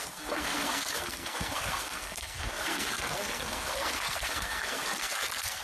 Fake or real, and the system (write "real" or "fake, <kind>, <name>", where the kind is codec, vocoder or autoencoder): fake, codec, SNAC